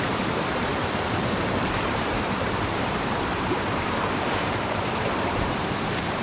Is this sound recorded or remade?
remade